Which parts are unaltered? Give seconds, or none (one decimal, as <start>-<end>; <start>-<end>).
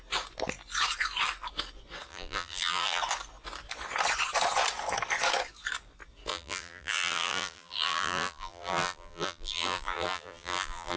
0.0-2.1; 3.0-6.3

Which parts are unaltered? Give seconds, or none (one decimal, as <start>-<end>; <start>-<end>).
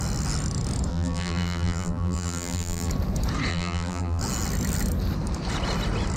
0.0-0.9; 2.9-3.5; 4.2-6.2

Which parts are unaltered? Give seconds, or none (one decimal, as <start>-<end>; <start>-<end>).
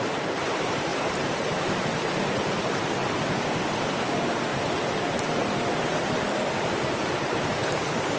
0.9-2.0; 4.5-6.3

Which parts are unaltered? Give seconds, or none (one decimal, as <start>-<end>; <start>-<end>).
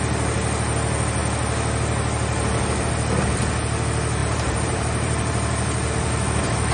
0.0-4.2; 5.9-6.7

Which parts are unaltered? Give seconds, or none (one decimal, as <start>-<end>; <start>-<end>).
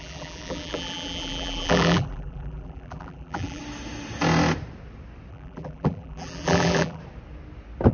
3.6-5.3; 7.0-7.9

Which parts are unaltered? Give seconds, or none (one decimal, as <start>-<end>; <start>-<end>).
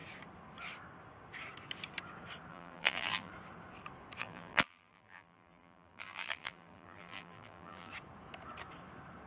0.0-2.5; 3.3-4.2; 7.9-9.3